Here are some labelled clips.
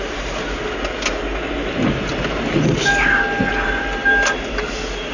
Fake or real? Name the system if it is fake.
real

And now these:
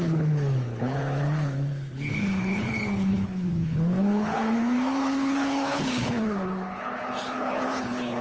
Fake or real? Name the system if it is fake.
fake, codec, HILCodec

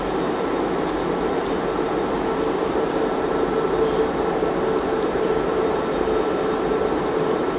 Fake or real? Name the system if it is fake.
real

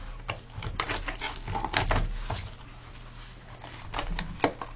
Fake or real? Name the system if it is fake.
real